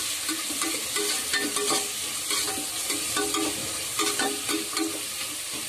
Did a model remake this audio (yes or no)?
no